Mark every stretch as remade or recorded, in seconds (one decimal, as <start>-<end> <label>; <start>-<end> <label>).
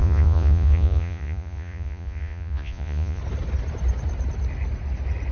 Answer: 0.0-3.2 remade; 3.2-5.3 recorded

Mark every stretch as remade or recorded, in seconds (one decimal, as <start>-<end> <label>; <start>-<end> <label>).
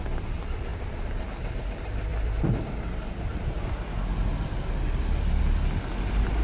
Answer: 0.0-6.4 recorded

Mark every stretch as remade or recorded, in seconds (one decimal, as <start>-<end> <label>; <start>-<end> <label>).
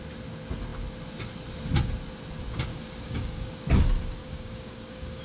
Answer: 0.0-2.7 recorded; 2.7-3.5 remade; 3.5-4.2 recorded; 4.2-5.2 remade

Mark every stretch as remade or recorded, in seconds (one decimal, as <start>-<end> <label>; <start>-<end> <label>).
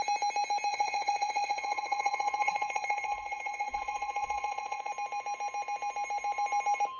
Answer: 0.0-0.7 recorded; 0.7-4.9 remade; 4.9-7.0 recorded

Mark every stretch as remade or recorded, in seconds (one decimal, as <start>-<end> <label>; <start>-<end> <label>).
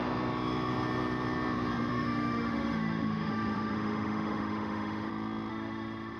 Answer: 0.0-1.9 recorded; 1.9-5.1 remade; 5.1-5.5 recorded; 5.5-6.2 remade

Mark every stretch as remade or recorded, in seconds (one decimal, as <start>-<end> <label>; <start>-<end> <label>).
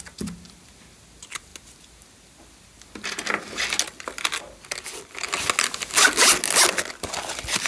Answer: 0.0-7.7 recorded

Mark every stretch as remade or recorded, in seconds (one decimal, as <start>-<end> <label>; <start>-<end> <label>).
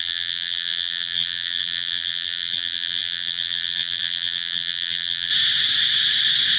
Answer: 0.0-5.3 remade; 5.3-6.6 recorded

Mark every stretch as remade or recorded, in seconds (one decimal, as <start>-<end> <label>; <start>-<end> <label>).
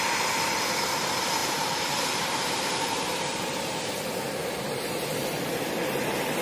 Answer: 0.0-1.4 recorded; 1.4-3.6 remade; 3.6-6.4 recorded